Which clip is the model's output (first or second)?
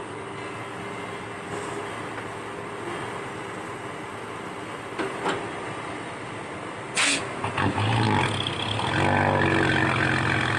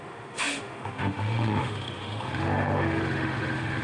second